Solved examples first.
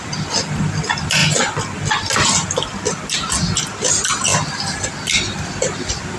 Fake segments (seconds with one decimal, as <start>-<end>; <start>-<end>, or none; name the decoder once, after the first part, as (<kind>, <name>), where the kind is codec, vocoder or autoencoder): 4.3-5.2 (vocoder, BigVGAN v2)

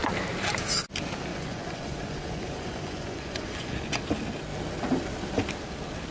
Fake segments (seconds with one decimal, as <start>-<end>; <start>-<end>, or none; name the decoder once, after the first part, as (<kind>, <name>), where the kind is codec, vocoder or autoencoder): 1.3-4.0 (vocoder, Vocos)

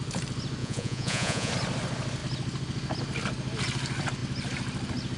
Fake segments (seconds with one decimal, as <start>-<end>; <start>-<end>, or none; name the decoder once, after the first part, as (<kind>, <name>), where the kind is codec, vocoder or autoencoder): 0.6-1.5 (vocoder, Vocos)